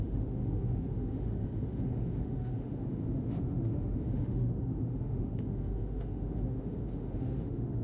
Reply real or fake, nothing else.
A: fake